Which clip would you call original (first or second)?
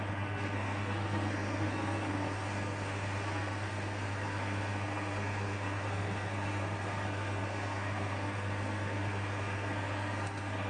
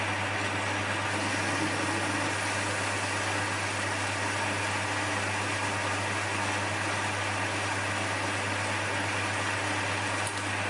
second